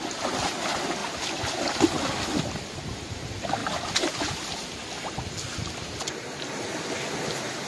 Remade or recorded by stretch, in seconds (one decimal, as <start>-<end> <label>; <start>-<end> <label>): 0.0-7.7 recorded